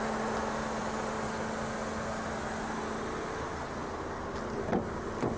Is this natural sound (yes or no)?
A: yes